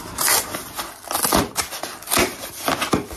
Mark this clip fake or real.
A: real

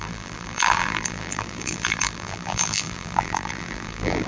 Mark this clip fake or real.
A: fake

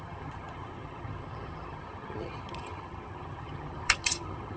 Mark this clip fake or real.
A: fake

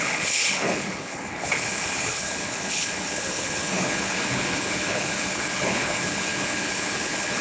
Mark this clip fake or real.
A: fake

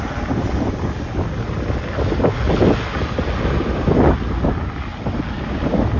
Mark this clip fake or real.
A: real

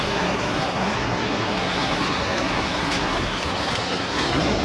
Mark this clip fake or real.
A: fake